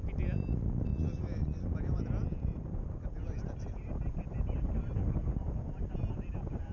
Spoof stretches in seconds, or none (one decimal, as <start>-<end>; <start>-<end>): 0.9-4.9